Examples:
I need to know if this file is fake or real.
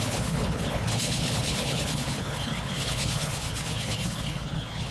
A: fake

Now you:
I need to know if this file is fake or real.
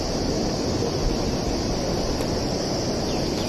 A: real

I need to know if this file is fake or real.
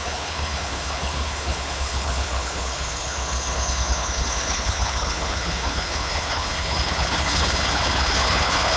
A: fake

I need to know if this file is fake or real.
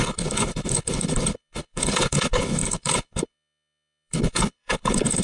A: fake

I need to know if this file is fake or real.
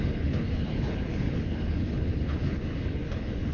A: fake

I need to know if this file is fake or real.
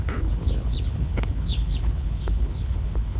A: fake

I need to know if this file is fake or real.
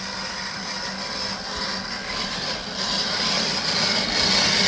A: real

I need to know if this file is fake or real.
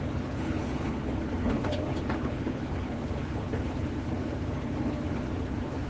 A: fake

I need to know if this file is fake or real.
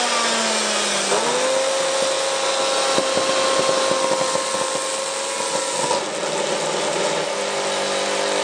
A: real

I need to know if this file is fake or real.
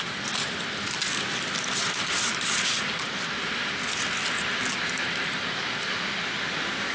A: real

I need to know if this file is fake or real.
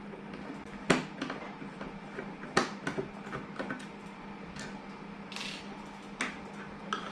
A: real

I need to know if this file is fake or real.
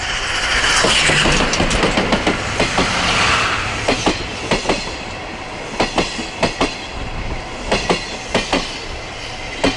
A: real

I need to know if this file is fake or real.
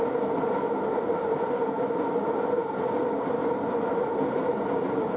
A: real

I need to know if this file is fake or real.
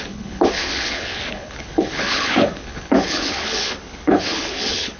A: fake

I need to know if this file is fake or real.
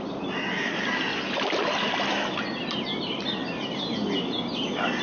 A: real